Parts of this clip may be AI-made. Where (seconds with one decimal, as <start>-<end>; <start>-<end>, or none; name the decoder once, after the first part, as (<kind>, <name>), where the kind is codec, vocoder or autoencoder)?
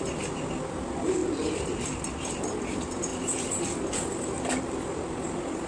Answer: 1.2-2.4 (vocoder, BigVGAN v2)